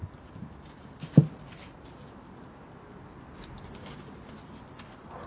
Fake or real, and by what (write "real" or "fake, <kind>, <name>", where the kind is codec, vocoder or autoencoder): real